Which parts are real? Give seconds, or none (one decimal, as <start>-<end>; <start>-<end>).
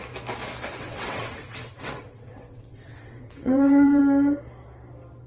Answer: 0.0-0.8; 4.0-5.3